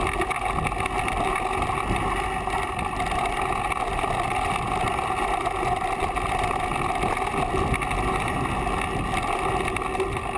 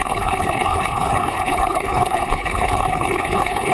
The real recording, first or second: first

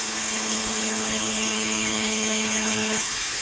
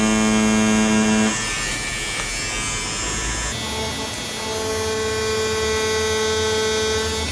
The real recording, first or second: second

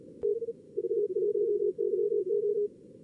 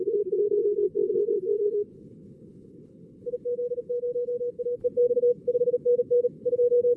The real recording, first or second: first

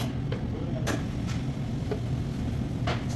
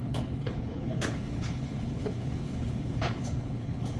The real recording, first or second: first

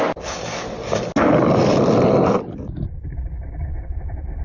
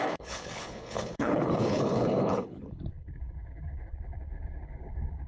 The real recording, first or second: first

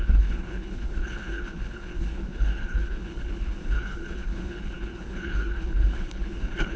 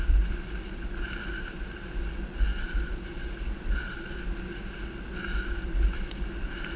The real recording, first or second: second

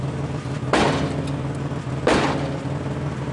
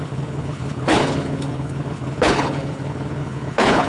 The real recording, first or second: first